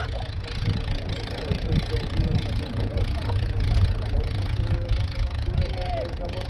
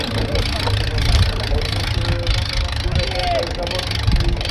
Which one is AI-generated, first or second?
first